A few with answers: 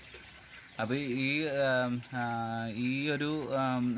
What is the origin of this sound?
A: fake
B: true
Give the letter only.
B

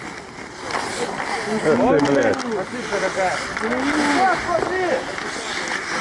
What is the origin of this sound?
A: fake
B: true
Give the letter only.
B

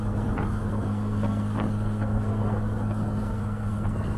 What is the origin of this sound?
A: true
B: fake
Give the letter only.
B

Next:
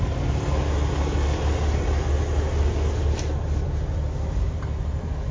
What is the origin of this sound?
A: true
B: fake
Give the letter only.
A